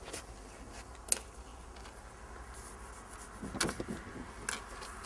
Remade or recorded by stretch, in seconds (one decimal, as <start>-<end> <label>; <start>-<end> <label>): 0.0-5.1 recorded